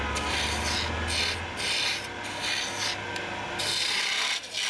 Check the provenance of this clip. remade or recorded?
recorded